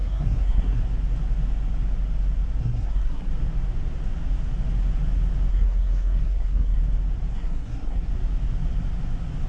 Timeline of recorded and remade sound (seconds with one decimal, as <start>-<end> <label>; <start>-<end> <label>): 0.0-0.8 remade; 0.8-2.6 recorded; 2.6-3.3 remade; 3.3-5.5 recorded; 5.5-6.8 remade; 6.8-7.3 recorded; 7.3-8.1 remade; 8.1-9.5 recorded